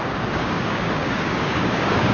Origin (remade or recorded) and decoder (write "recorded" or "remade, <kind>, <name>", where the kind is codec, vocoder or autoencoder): remade, codec, DAC